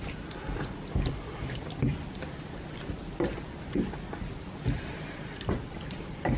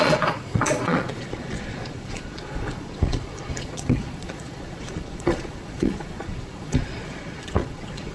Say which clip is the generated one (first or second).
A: second